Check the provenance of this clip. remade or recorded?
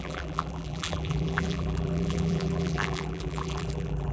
remade